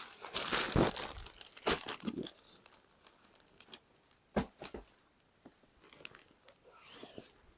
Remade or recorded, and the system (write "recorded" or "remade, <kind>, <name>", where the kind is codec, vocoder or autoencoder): recorded